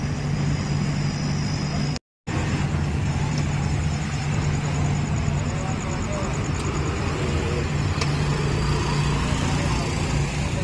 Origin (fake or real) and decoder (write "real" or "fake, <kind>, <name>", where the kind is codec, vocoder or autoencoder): real